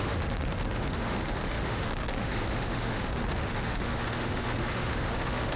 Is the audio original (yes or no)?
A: no